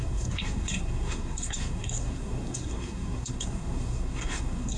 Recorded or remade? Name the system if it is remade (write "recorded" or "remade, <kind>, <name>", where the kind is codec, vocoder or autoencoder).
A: remade, codec, SNAC